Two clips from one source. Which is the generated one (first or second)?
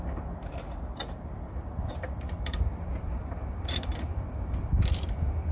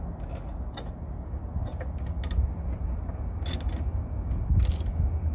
first